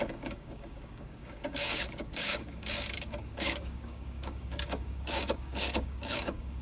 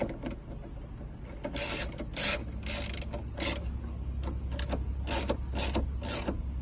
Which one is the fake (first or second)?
first